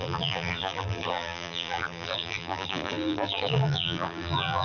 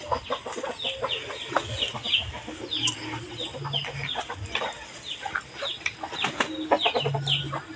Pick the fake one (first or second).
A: first